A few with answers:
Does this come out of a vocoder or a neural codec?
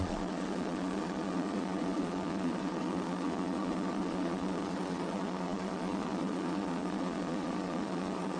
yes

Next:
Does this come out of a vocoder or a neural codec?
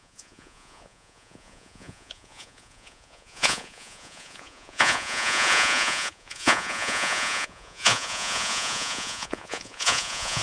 yes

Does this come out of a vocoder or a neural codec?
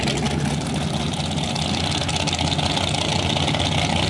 no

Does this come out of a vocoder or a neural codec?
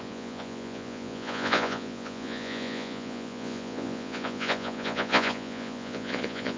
yes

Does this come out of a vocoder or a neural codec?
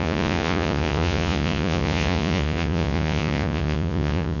yes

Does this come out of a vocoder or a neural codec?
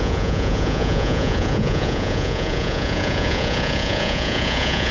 yes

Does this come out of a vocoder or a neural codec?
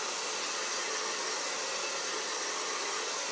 no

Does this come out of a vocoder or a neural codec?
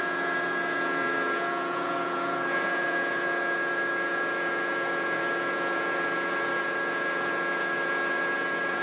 yes